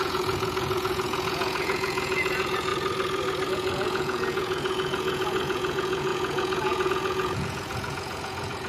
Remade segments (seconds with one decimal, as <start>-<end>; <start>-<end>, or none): 0.0-2.7; 3.5-8.7